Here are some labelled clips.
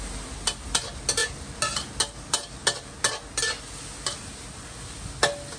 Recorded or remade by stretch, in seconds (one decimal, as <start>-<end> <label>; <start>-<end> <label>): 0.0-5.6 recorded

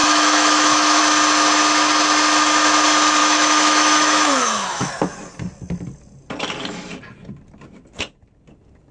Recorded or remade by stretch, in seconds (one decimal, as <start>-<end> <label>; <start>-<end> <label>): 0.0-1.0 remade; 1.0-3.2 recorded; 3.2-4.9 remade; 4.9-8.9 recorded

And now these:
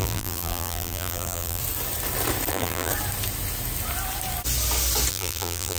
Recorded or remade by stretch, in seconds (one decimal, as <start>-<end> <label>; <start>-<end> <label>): 0.0-1.6 remade; 1.6-2.5 recorded; 2.5-2.9 remade; 2.9-5.1 recorded; 5.1-5.8 remade

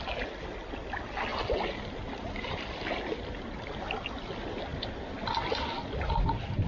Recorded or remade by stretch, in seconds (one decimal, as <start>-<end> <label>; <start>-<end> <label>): 0.0-6.7 recorded

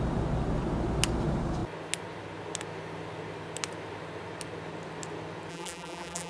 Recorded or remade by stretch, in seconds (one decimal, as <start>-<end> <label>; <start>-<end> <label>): 0.0-5.5 recorded; 5.5-6.3 remade

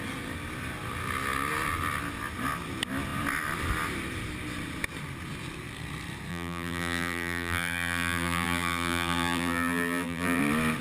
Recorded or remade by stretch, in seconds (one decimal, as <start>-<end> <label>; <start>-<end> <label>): 0.0-6.3 recorded; 6.3-10.4 remade; 10.4-10.8 recorded

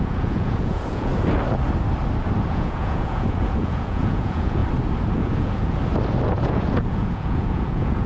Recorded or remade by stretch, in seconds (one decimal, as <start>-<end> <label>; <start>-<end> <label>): 0.0-1.1 remade; 1.1-2.5 recorded; 2.5-4.6 remade; 4.6-5.1 recorded; 5.1-5.8 remade; 5.8-6.3 recorded; 6.3-8.1 remade